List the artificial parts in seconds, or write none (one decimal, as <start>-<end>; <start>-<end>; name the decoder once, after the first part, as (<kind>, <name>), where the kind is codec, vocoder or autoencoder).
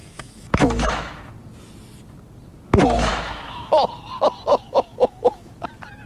0.0-1.3 (autoencoder, DAC-VAE); 3.1-3.7; 4.5-5.5